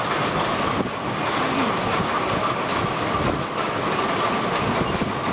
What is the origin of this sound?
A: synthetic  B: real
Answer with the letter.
B